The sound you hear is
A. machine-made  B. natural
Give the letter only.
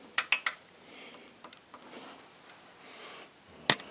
B